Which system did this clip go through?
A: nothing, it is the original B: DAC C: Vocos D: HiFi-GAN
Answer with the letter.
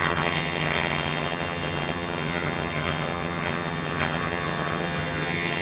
D